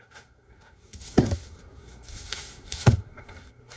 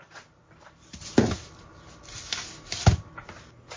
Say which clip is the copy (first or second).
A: first